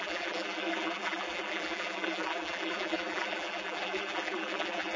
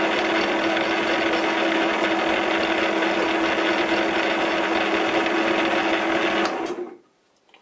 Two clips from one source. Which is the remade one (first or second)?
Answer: first